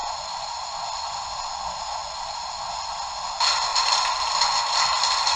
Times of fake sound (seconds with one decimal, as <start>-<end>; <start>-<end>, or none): none